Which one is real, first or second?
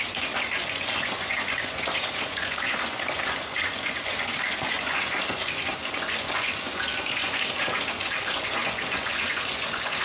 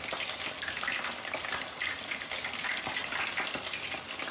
second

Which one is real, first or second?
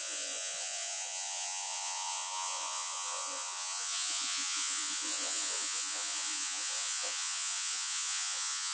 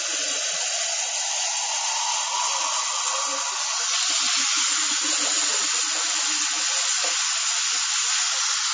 second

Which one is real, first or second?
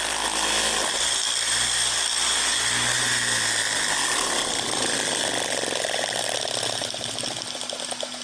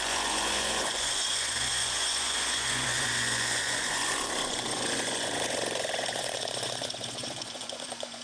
first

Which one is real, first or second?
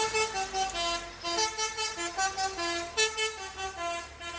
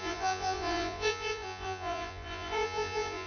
first